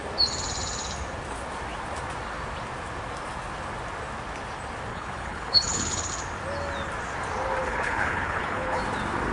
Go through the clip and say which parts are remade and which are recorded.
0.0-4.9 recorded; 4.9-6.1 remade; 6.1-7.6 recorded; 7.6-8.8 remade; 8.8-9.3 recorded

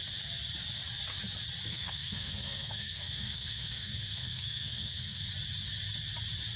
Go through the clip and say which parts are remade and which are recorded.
0.0-1.7 recorded; 1.7-5.2 remade; 5.2-6.6 recorded